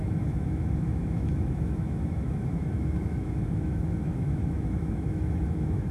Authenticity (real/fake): fake